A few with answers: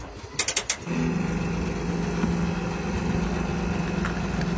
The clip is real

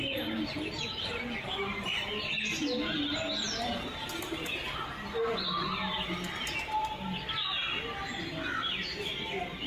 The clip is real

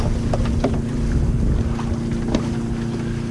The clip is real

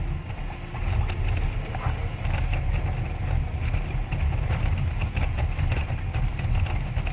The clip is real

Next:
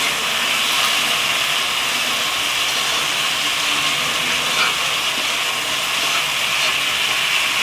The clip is real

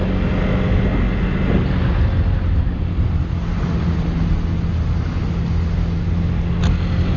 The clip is real